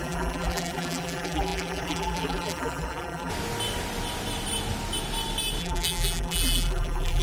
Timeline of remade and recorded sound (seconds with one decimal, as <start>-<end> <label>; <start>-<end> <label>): 0.0-3.3 remade; 3.3-5.6 recorded; 5.6-7.2 remade